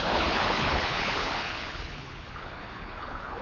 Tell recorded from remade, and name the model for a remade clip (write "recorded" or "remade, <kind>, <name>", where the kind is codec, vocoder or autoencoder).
remade, codec, HILCodec